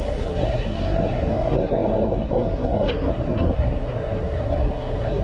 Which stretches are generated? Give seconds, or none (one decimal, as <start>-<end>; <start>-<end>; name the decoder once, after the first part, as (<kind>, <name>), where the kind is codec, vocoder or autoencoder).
0.0-5.2 (codec, SNAC)